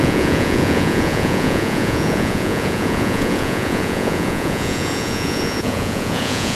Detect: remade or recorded remade